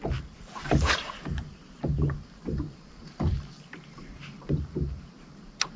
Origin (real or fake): fake